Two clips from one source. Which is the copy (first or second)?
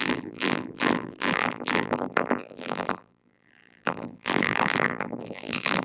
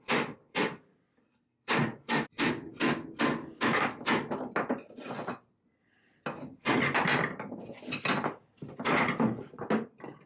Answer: first